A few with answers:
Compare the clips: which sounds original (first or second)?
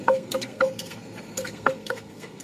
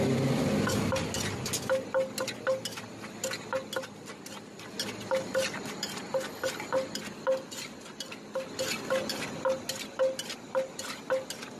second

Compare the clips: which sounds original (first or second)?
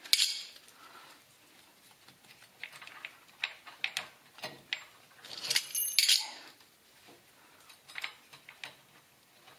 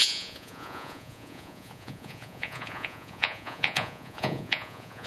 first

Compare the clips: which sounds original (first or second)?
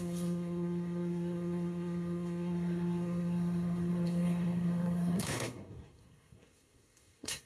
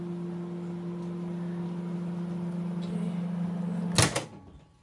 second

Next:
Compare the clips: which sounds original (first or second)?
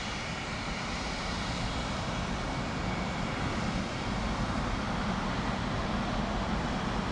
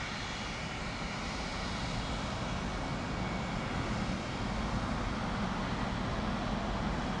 second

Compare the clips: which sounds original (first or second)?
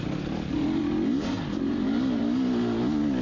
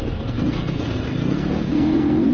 first